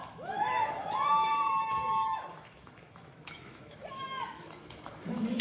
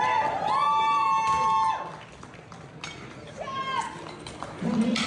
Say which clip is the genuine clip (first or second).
second